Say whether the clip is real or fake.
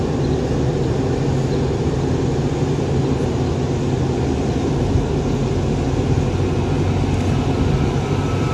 real